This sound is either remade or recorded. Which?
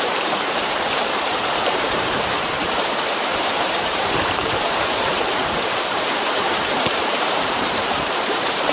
remade